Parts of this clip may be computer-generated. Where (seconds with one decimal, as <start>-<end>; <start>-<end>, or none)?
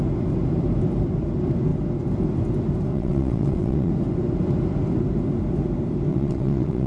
2.9-3.9; 6.1-6.9